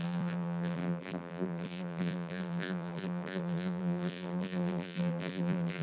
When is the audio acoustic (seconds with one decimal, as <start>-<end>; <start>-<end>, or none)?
none